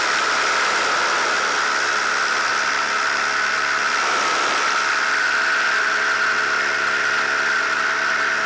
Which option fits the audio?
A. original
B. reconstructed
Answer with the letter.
A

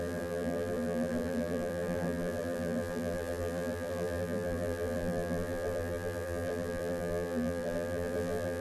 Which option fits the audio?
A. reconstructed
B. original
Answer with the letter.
A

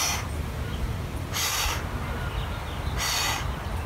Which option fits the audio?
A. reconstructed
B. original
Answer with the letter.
B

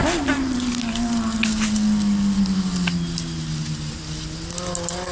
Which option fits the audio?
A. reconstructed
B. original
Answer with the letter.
B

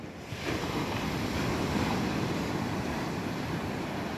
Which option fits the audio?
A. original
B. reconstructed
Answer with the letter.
A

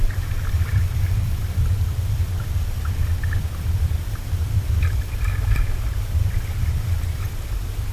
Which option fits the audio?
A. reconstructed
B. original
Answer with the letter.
A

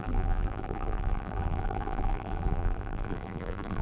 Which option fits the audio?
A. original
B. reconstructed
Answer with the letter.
B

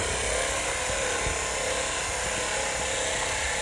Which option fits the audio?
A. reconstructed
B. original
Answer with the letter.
B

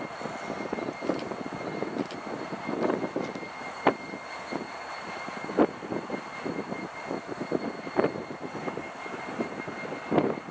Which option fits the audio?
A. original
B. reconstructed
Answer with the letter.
A